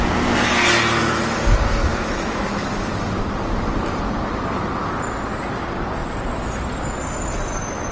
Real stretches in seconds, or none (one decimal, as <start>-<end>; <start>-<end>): 0.0-1.9; 4.2-7.9